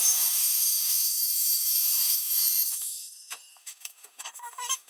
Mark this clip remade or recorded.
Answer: remade